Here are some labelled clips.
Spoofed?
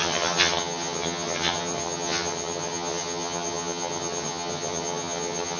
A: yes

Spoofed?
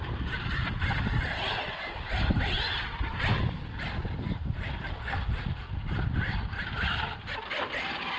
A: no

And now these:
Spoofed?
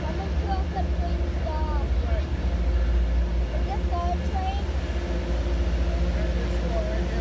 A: no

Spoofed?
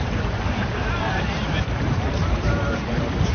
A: yes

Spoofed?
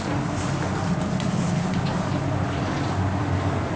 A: no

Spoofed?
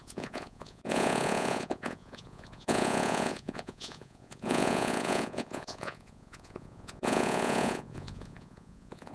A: yes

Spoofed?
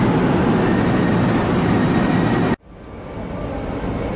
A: no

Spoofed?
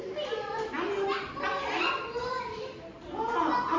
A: no